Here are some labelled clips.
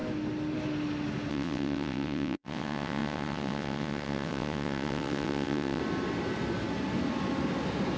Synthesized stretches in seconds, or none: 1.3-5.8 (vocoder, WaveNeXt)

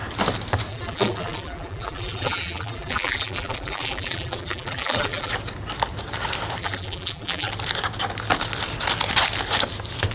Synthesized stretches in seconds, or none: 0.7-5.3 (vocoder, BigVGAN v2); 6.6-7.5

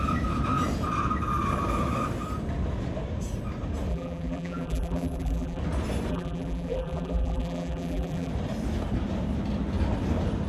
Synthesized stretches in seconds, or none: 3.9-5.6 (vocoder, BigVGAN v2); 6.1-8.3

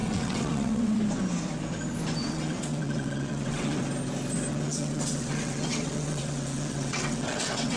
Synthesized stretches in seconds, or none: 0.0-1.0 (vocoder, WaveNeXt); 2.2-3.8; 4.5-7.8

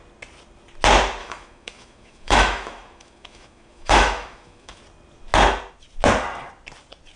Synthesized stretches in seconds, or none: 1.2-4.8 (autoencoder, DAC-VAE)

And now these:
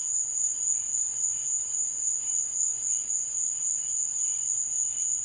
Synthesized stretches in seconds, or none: none